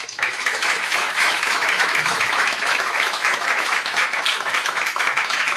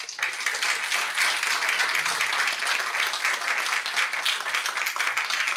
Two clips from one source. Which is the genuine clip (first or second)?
second